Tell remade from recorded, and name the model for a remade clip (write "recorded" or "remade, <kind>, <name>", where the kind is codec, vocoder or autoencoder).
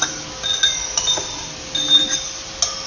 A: recorded